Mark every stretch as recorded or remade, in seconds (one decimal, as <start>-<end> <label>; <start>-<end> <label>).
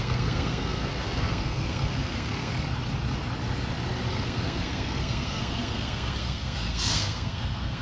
0.0-2.5 remade; 2.5-4.1 recorded; 4.1-7.8 remade